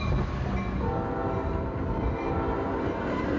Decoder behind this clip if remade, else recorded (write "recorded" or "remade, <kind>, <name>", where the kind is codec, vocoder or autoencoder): recorded